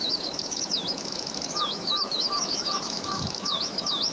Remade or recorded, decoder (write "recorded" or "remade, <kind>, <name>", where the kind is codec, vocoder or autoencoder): remade, autoencoder, DAC-VAE